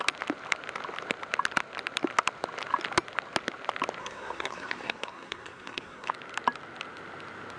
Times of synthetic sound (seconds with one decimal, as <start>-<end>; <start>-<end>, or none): 4.0-6.1